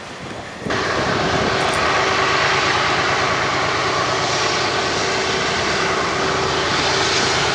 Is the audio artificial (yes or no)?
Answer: no